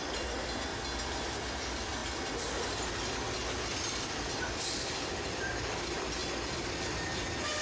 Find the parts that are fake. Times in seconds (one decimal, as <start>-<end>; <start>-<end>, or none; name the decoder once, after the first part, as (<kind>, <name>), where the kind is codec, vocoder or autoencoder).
0.0-0.7 (vocoder, BigVGAN v2); 1.5-2.0; 3.8-6.2; 6.8-7.6